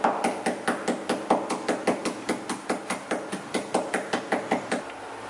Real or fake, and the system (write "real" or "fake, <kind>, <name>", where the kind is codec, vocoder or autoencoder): real